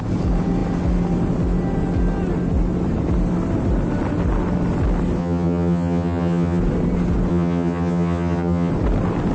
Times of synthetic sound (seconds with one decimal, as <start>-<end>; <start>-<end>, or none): 5.2-6.6; 7.3-8.7